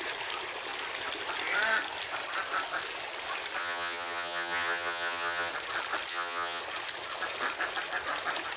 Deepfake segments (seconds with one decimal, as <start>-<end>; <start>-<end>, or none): 3.6-5.5; 6.1-6.6

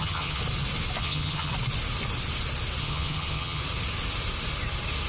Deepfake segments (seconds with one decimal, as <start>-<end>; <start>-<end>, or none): 0.0-0.4; 1.0-1.5; 2.8-3.6

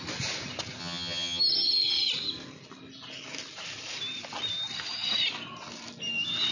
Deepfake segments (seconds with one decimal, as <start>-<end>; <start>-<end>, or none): 0.8-1.4

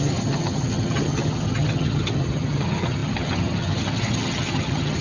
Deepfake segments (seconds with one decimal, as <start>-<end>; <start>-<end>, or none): 0.0-5.0

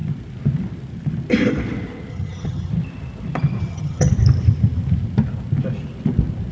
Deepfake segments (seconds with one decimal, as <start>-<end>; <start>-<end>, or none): 2.1-2.7; 3.6-4.1